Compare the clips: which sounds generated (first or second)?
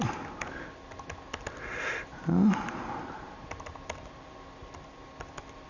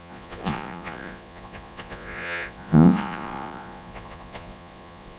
second